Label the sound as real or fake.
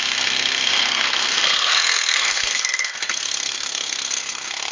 fake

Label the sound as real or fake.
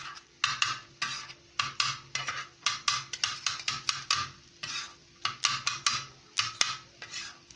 real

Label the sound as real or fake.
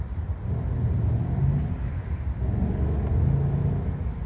real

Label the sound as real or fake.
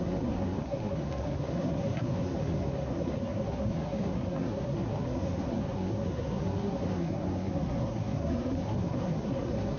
fake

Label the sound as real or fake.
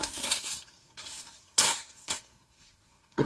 fake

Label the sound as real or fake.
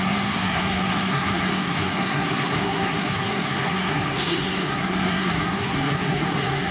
fake